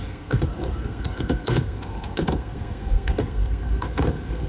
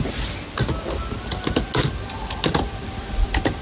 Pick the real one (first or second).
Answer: second